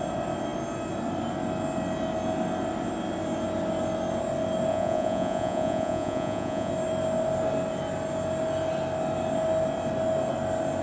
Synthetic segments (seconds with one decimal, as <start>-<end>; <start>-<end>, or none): 4.7-6.7